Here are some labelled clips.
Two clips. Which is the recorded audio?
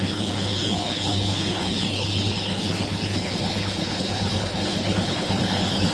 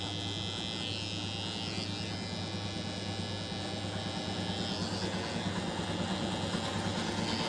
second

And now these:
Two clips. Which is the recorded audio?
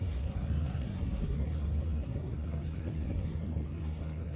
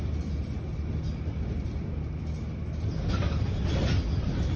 second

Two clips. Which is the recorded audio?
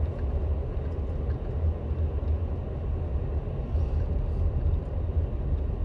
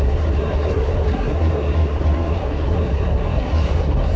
first